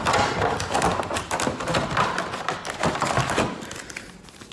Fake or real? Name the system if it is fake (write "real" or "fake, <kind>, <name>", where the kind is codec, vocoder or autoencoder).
real